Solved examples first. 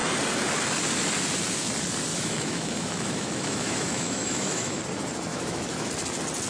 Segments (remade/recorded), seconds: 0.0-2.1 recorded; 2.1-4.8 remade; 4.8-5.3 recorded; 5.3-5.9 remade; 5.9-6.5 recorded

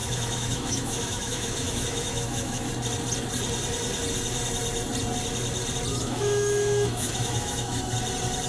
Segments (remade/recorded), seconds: 0.0-2.7 remade; 2.7-5.9 recorded; 5.9-7.8 remade; 7.8-8.5 recorded